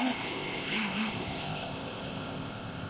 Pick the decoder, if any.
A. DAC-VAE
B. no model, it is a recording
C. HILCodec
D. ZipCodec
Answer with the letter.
D